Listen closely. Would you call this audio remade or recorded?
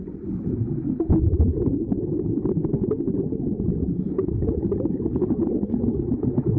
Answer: recorded